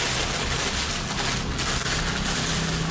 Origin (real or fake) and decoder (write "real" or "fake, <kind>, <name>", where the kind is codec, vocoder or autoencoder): real